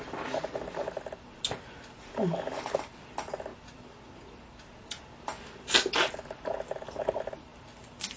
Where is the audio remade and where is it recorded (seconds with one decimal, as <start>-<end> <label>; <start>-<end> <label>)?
0.0-8.2 recorded